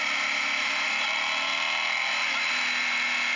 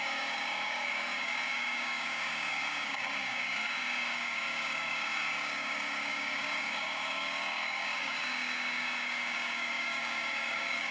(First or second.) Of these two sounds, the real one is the first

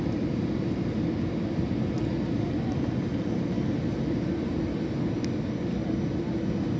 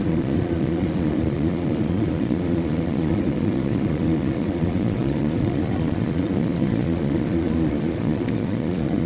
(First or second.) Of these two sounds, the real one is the first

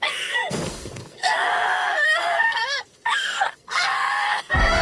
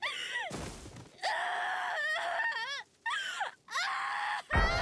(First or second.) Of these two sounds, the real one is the second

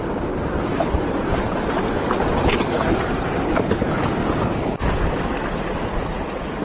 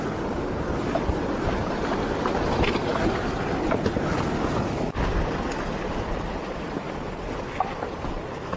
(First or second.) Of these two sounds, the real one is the second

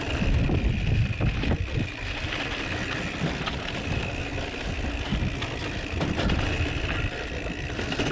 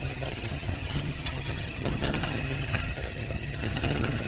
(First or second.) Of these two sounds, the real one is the first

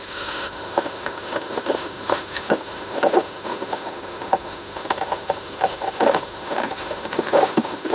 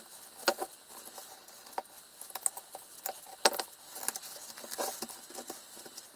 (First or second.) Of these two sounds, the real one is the second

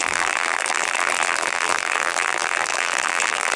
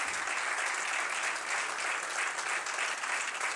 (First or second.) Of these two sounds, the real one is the second